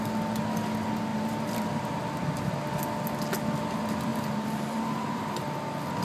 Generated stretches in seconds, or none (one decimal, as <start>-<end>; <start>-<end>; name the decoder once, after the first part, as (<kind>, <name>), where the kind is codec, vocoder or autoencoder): 1.1-2.0 (vocoder, BigVGAN v2); 4.1-5.4